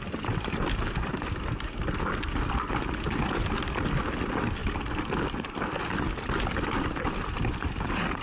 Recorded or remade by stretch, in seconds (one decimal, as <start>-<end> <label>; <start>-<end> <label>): 0.0-8.2 recorded